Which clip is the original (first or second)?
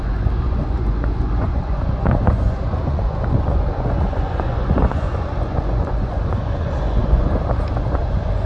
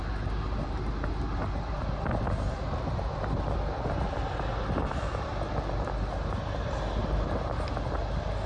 second